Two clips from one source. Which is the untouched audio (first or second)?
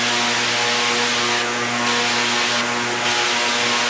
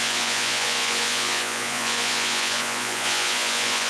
first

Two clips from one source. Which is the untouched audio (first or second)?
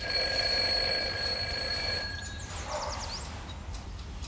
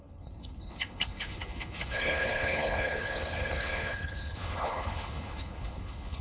first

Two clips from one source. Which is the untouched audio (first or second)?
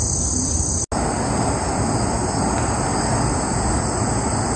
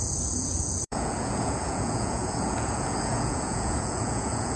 first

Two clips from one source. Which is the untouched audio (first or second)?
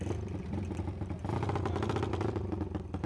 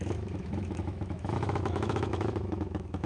first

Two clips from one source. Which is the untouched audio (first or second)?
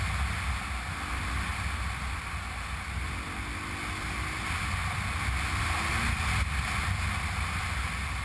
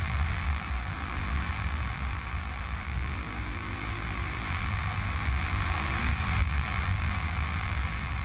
first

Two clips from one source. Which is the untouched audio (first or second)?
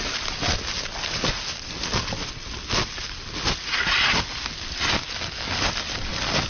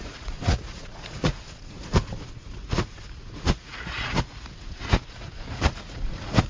first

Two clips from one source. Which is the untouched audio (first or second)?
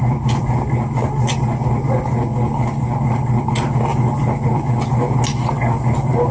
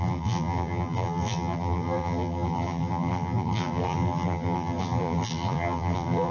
first